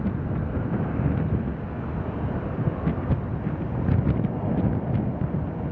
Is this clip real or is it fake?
real